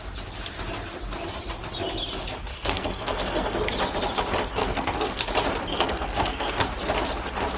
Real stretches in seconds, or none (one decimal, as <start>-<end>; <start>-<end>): 0.0-2.5; 3.8-4.6; 5.3-5.7; 6.7-7.6